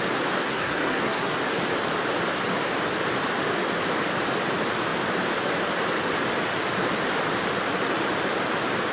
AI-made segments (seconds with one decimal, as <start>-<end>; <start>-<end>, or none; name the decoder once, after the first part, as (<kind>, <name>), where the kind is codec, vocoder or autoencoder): 0.4-1.4 (codec, SNAC)